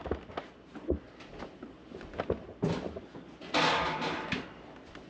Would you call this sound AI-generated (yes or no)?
no